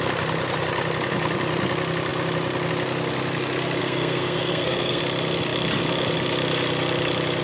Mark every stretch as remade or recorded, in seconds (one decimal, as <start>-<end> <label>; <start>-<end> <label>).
0.0-3.8 recorded; 3.8-5.0 remade; 5.0-7.4 recorded